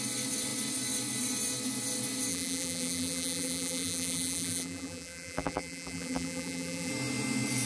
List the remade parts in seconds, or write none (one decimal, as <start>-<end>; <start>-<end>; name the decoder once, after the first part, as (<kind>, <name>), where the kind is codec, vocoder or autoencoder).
2.3-6.9 (vocoder, BigVGAN v2)